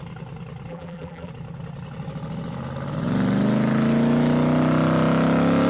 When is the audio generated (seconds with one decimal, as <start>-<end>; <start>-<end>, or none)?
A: 0.7-1.3